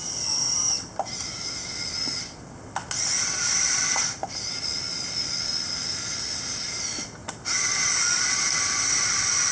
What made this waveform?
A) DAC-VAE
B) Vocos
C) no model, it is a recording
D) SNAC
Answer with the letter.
C